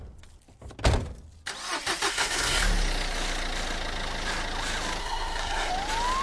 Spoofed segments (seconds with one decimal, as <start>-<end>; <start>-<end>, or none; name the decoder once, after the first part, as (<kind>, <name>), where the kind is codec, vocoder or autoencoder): 2.1-2.6 (codec, SNAC); 5.0-5.7